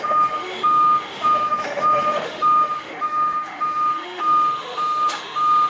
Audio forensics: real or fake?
fake